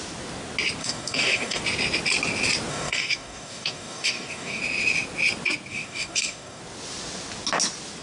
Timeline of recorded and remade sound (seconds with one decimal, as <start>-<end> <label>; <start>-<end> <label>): 0.0-0.8 recorded; 0.8-1.6 remade; 1.6-2.7 recorded; 2.7-4.6 remade; 4.6-5.7 recorded; 5.7-6.6 remade; 6.6-8.0 recorded

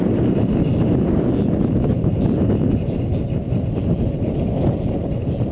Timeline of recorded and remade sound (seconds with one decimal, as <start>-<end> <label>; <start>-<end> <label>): 0.0-5.5 recorded

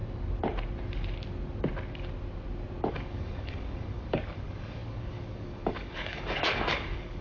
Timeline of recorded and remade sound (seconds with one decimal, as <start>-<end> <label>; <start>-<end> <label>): 0.0-2.9 recorded; 2.9-7.2 remade

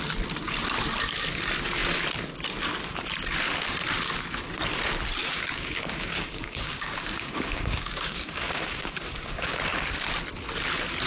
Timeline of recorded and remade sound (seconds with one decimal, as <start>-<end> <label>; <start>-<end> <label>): 0.0-5.2 recorded; 5.2-9.6 remade; 9.6-11.1 recorded

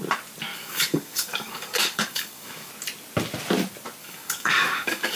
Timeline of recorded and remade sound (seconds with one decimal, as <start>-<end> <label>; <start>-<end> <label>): 0.0-0.5 recorded; 0.5-2.7 remade; 2.7-4.0 recorded; 4.0-5.2 remade